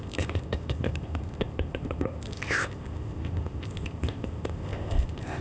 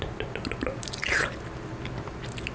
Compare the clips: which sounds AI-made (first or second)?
first